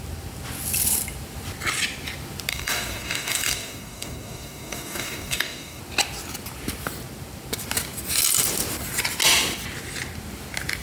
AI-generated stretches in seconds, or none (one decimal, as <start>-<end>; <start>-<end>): 2.5-5.8

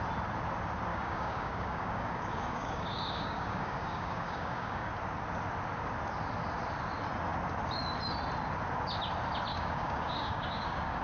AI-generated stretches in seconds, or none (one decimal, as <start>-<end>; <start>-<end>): 0.9-4.9; 9.5-11.0